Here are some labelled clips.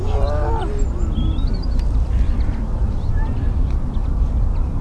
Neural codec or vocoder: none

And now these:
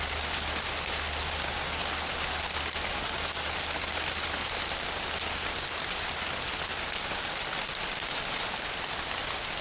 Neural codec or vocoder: none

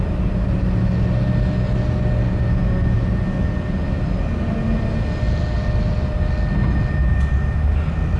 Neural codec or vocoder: none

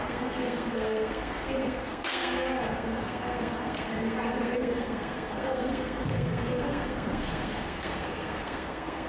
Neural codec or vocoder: codec, SNAC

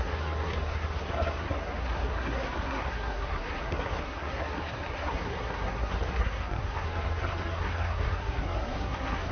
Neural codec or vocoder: codec, SNAC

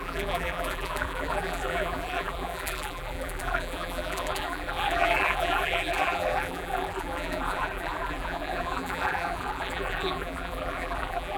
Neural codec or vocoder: vocoder, BigVGAN v2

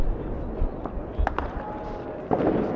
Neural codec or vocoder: none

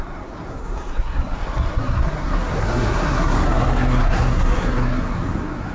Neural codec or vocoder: codec, SNAC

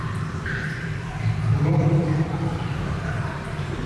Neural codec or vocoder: vocoder, BigVGAN v2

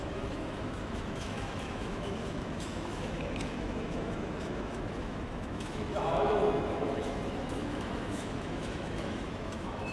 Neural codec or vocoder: autoencoder, DAC-VAE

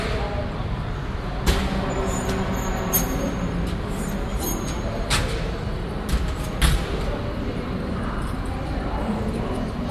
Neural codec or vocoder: none